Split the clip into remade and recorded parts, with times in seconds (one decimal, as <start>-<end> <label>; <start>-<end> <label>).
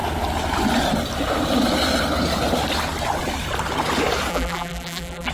0.0-4.3 recorded; 4.3-5.3 remade